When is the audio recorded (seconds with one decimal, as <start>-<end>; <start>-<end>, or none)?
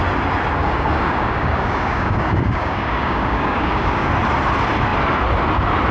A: 0.0-0.6; 4.1-5.9